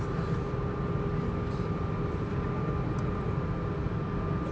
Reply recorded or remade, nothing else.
recorded